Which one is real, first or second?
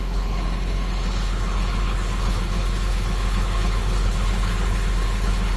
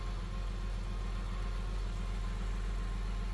second